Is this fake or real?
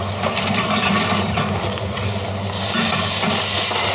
real